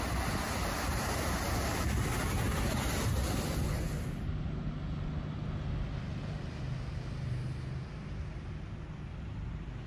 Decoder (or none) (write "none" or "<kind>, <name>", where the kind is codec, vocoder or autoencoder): none